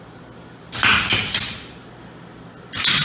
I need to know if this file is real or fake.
real